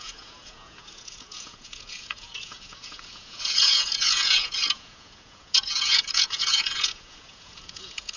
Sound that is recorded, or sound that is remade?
remade